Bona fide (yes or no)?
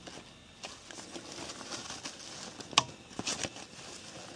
yes